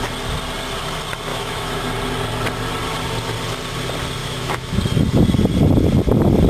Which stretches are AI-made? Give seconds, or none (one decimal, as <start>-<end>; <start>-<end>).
1.3-1.9; 4.2-4.8